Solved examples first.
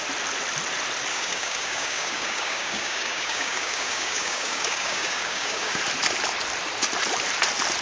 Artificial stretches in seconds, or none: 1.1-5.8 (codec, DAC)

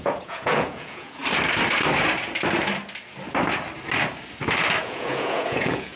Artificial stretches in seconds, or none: 0.0-1.2 (vocoder, Vocos); 4.8-6.0